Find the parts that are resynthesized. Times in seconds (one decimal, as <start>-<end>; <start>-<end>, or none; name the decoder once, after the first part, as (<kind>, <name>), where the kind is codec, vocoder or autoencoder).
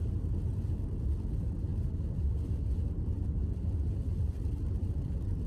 none